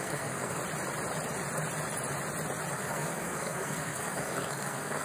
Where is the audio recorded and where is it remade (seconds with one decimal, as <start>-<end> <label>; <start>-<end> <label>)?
0.0-0.6 remade; 0.6-2.7 recorded; 2.7-5.0 remade